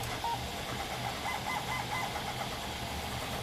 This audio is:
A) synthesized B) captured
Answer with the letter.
B